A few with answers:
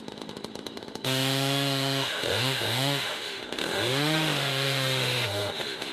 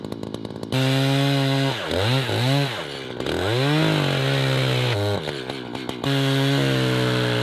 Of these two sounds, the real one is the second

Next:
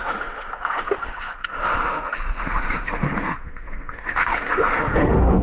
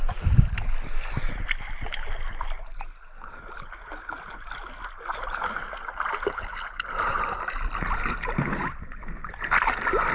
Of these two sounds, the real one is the second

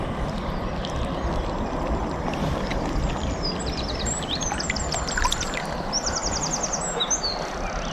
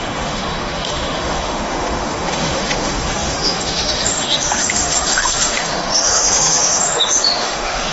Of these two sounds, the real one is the first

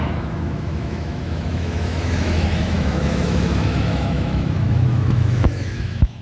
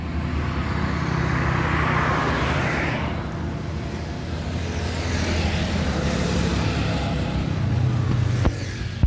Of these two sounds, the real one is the second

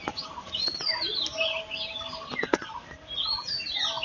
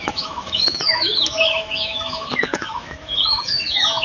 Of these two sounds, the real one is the first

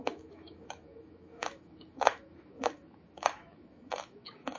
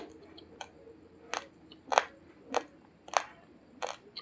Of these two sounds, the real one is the second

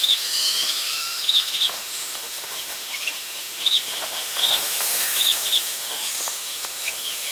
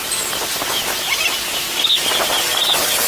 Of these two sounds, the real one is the second